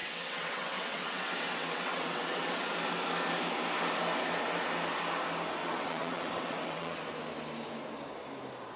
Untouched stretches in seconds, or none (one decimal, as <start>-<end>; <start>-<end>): 2.7-5.6; 7.0-8.8